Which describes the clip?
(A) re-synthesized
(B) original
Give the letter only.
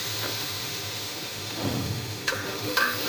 A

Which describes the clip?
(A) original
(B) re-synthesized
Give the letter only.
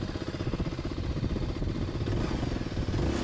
A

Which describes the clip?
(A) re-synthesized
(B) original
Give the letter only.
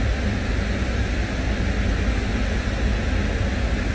B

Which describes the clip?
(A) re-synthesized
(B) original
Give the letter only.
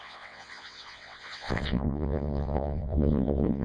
A